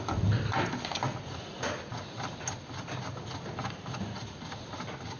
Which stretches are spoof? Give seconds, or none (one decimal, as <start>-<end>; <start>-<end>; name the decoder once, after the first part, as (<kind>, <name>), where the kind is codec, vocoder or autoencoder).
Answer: none